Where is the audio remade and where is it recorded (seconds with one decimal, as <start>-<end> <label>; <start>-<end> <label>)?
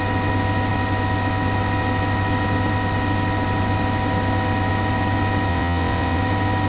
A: 0.0-5.5 recorded; 5.5-6.2 remade; 6.2-6.7 recorded